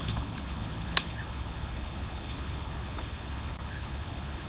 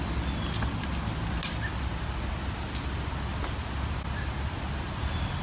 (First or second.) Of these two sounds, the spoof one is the first